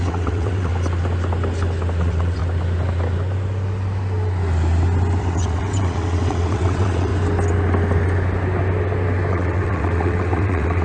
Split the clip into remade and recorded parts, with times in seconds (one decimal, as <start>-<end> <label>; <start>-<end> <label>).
0.0-0.7 remade; 0.7-2.0 recorded; 2.0-2.4 remade; 2.4-5.2 recorded; 5.2-7.1 remade; 7.1-9.3 recorded; 9.3-10.8 remade